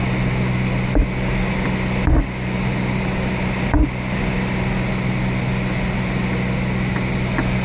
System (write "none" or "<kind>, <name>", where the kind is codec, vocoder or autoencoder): none